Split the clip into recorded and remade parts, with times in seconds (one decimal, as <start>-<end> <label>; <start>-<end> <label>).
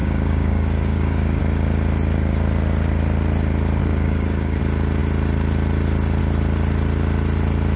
0.0-1.4 remade; 1.4-3.8 recorded; 3.8-4.6 remade; 4.6-7.8 recorded